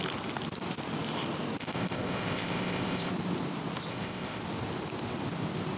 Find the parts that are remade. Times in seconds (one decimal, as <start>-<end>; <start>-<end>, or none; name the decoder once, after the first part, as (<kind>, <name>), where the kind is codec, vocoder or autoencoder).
1.6-3.1 (codec, ZipCodec); 3.9-4.4